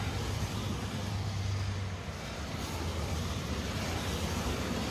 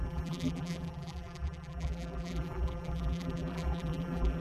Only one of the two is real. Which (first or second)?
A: first